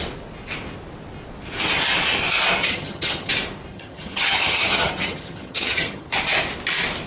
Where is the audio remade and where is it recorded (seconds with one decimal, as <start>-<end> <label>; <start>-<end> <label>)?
0.0-2.6 recorded; 2.6-3.3 remade; 3.3-3.7 recorded; 3.7-6.1 remade; 6.1-7.1 recorded